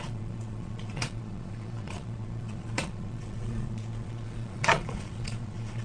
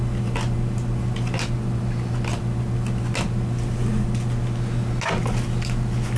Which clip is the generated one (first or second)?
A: first